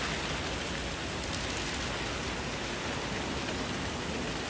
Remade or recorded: recorded